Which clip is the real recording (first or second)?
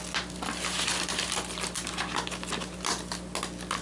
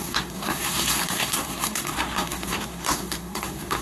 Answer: first